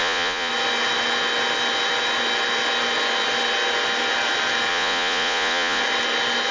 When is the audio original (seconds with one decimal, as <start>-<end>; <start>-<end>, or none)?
0.5-4.7; 5.8-6.5